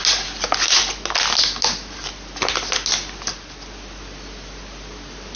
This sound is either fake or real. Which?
real